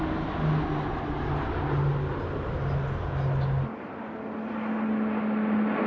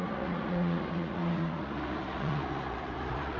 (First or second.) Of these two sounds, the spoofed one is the second